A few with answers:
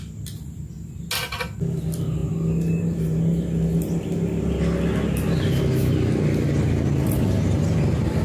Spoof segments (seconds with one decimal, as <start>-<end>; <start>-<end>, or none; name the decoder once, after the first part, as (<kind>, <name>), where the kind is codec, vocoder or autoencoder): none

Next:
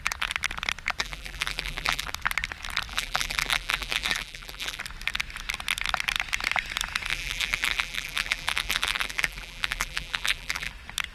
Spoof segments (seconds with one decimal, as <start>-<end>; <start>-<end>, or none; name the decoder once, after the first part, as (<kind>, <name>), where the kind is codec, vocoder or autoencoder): 1.0-2.1 (vocoder, BigVGAN v2); 2.9-4.8; 7.1-10.7

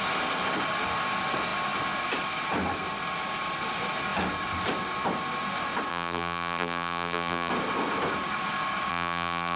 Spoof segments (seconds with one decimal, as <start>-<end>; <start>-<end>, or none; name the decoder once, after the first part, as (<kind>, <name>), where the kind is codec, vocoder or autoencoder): 5.9-7.5 (vocoder, BigVGAN v2); 8.9-9.6

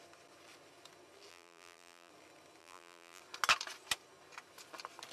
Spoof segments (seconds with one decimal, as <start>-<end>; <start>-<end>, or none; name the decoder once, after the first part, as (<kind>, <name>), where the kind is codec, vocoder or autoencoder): 1.3-2.1 (vocoder, BigVGAN v2); 2.6-3.2

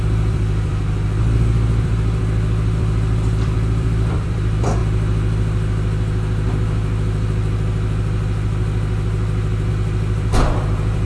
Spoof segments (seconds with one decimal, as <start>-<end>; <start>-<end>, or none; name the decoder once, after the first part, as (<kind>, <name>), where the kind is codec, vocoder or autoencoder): 0.0-4.8 (vocoder, BigVGAN v2); 9.7-11.1